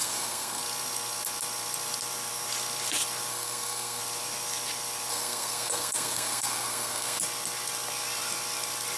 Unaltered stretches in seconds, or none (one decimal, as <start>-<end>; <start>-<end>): 0.6-3.3; 4.0-5.1; 7.2-9.0